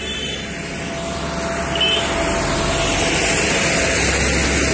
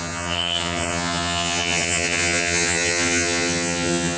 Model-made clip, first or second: second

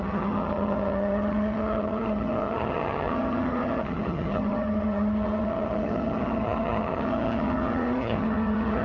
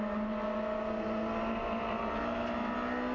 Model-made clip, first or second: first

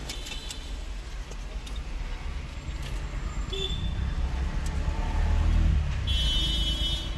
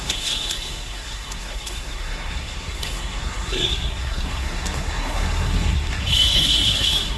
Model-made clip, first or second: second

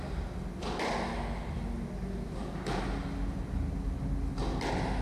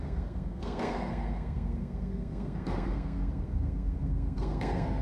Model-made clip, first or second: second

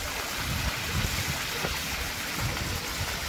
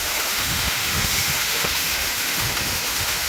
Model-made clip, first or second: second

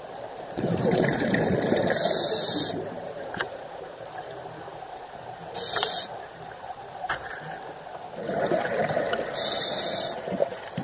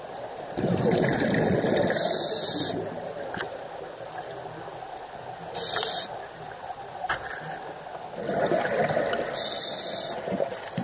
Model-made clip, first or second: first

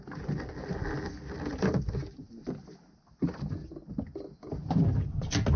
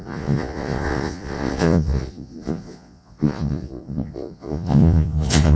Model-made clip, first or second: second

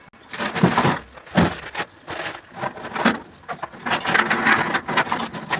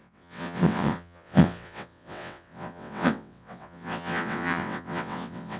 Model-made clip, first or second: second